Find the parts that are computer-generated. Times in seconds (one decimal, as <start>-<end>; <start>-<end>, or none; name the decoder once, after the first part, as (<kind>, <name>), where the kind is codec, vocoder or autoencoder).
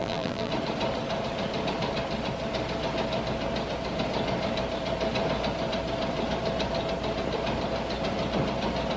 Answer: 0.0-0.5 (vocoder, BigVGAN v2)